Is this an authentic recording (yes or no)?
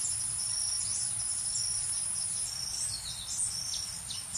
yes